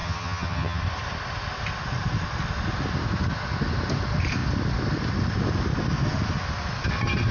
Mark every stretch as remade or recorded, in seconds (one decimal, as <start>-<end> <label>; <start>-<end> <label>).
0.0-0.8 remade; 0.8-7.3 recorded